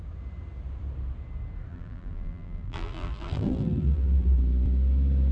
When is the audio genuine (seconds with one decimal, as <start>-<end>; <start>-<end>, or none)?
0.0-1.7; 4.4-5.3